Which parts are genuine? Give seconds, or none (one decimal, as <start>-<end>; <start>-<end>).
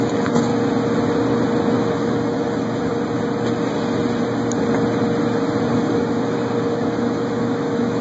0.5-1.8; 2.9-5.7